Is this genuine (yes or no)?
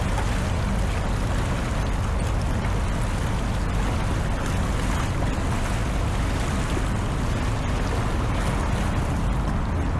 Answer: yes